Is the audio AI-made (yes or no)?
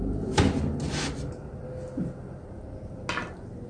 no